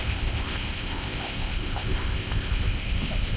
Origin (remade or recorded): remade